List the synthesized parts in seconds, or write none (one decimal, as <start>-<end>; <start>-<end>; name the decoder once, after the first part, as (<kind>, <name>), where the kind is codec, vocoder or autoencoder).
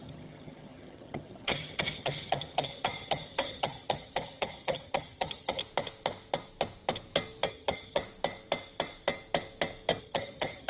0.0-5.6 (vocoder, HiFi-GAN); 7.5-8.0; 10.0-10.7